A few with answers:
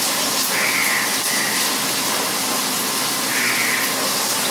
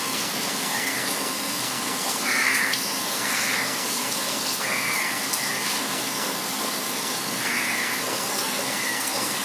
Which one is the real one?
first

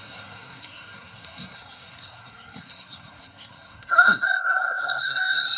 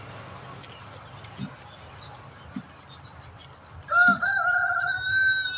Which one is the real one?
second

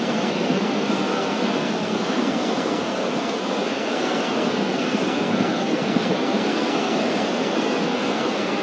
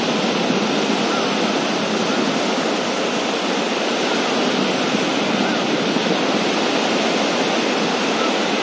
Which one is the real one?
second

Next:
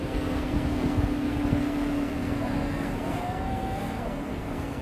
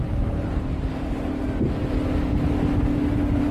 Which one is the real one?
second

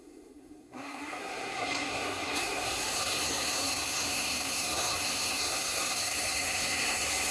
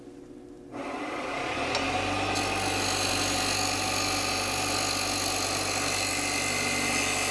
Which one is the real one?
second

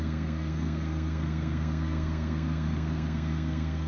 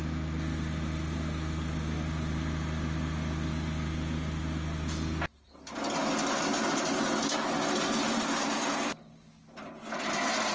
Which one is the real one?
second